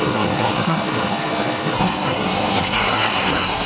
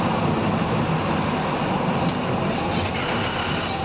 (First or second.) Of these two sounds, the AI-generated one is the first